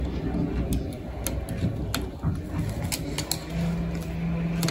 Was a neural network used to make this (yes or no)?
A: no